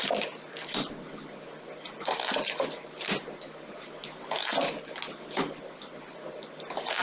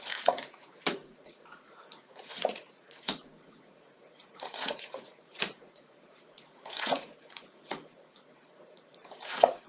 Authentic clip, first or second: first